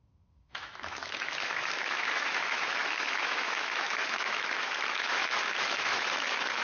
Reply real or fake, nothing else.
fake